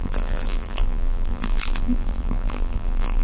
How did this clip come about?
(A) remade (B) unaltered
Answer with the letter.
A